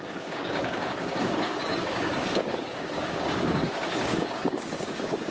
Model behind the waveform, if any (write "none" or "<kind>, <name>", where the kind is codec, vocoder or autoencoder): codec, DAC